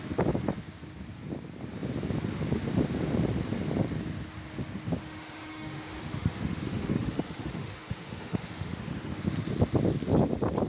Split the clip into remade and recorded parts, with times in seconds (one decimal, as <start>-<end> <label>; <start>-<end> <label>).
0.0-5.0 recorded; 5.0-9.2 remade; 9.2-10.7 recorded